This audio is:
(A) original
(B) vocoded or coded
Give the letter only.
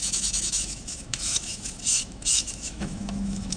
B